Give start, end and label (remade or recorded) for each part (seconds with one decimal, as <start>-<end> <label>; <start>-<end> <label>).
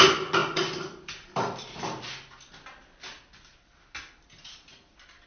0.0-0.4 recorded; 0.4-2.4 remade; 2.4-5.3 recorded